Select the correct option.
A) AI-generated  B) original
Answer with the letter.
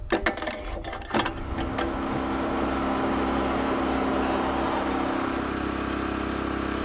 B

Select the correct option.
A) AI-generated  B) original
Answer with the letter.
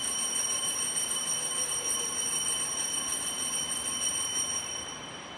A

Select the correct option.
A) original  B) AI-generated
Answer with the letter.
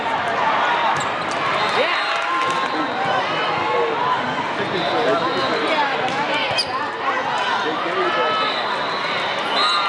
A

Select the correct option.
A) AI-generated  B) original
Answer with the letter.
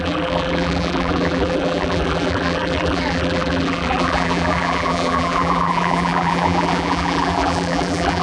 A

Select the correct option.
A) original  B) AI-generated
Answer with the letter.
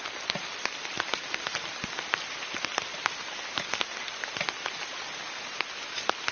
A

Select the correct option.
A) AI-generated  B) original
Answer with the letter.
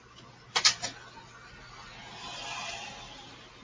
B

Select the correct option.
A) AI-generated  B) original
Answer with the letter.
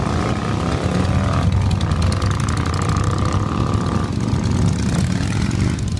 B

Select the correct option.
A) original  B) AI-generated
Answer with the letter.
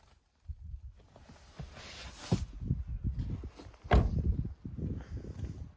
A